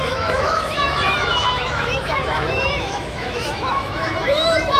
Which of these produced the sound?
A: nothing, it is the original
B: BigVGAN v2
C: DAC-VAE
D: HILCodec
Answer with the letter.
C